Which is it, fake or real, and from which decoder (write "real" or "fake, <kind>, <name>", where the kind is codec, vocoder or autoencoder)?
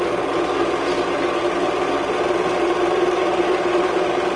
real